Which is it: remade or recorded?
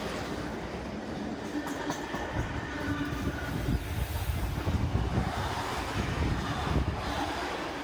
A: recorded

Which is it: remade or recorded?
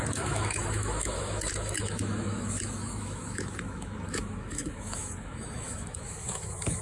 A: remade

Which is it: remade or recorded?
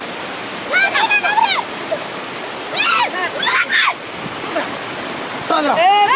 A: recorded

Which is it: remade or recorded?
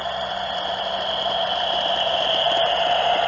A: recorded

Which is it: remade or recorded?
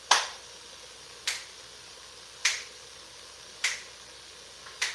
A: recorded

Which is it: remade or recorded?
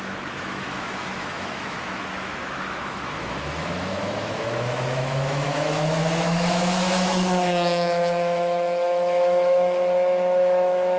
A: remade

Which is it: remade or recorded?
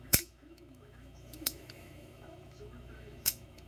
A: remade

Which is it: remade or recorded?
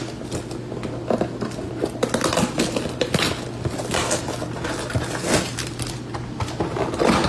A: recorded